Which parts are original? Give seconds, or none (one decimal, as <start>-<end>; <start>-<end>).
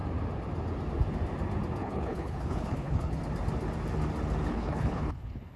0.0-1.8; 3.2-4.5